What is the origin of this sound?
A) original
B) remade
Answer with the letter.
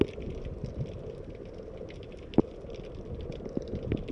A